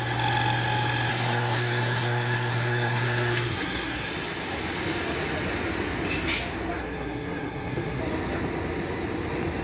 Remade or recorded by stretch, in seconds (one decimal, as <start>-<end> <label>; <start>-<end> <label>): 0.0-1.1 recorded; 1.1-4.1 remade; 4.1-6.8 recorded; 6.8-8.0 remade; 8.0-9.6 recorded